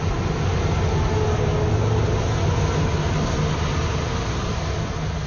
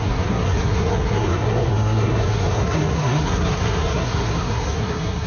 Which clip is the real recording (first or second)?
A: first